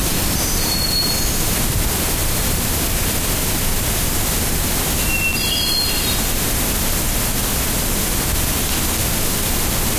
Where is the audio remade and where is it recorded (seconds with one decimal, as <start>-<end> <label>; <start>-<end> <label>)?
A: 0.0-10.0 recorded